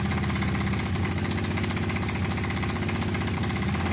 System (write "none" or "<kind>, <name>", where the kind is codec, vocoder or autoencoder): none